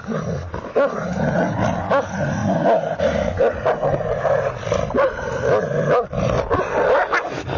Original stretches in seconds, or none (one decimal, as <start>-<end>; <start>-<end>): 0.0-7.6